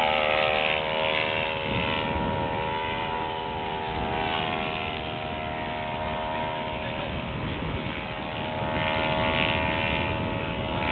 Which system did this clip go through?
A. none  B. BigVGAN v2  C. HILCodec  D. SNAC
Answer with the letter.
A